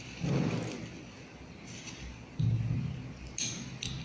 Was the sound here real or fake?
real